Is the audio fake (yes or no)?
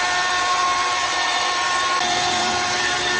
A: yes